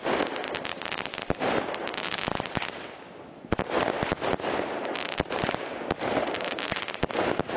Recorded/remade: recorded